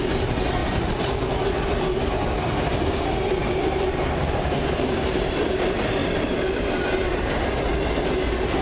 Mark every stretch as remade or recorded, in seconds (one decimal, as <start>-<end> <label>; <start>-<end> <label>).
0.0-3.4 recorded; 3.4-4.0 remade; 4.0-6.0 recorded; 6.0-6.8 remade; 6.8-8.6 recorded